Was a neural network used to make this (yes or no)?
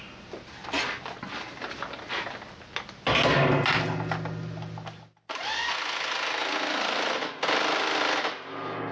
no